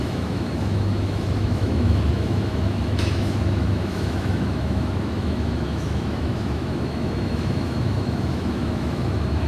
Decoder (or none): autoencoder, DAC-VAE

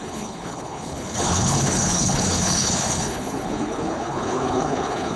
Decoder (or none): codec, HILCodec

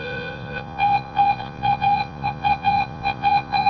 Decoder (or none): vocoder, Vocos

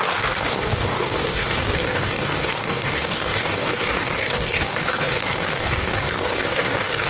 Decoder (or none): codec, DAC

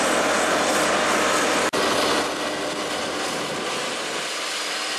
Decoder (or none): none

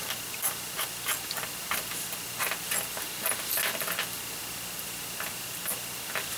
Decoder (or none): none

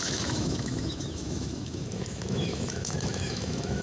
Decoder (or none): autoencoder, DAC-VAE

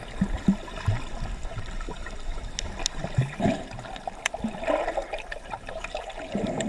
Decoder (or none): none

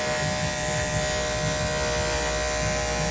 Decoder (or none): none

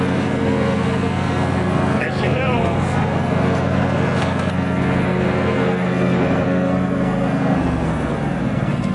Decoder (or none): codec, SNAC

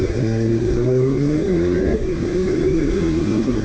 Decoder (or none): codec, SNAC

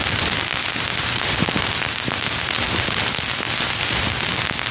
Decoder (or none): none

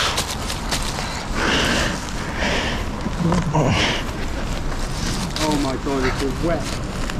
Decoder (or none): none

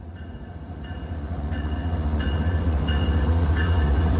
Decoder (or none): vocoder, Vocos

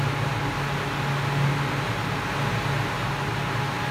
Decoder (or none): none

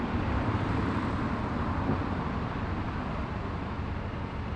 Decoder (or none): vocoder, BigVGAN v2